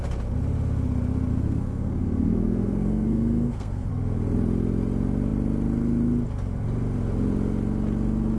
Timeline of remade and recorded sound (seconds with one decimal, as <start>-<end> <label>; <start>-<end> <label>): 0.0-1.3 recorded; 1.3-3.9 remade; 3.9-8.4 recorded